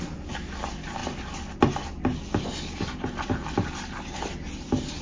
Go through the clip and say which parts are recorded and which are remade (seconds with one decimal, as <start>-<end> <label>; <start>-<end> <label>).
0.0-5.0 recorded